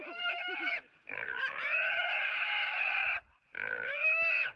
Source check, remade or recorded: recorded